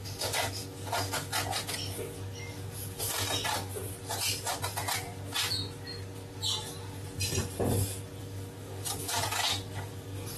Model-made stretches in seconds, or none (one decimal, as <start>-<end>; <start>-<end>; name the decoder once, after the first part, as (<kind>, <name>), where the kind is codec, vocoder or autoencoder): 0.0-3.7 (codec, DAC); 8.2-10.4